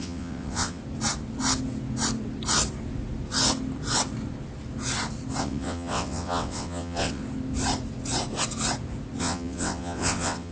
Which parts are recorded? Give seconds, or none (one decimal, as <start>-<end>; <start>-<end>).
0.8-5.4; 7.2-9.2